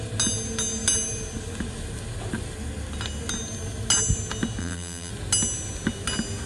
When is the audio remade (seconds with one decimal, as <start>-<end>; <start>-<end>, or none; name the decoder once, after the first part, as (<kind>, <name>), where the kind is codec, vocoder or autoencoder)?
4.6-5.1 (vocoder, BigVGAN v2)